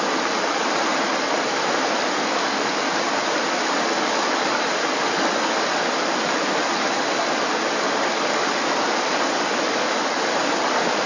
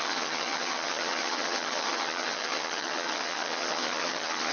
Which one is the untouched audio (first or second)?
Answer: first